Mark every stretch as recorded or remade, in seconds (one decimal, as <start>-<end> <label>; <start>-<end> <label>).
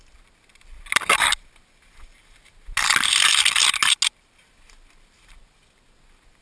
0.0-6.4 recorded